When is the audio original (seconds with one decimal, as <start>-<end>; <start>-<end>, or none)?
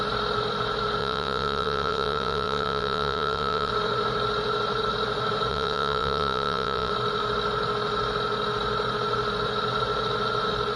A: 0.0-1.0; 3.7-5.5; 6.9-10.8